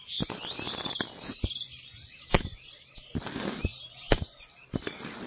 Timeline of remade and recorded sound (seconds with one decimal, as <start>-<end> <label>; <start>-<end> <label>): 0.0-3.2 remade; 3.2-3.7 recorded; 3.7-5.3 remade